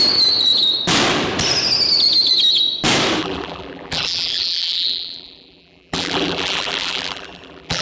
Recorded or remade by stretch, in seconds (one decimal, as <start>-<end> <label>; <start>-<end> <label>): 0.0-3.2 recorded; 3.2-7.8 remade